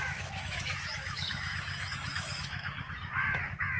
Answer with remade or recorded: remade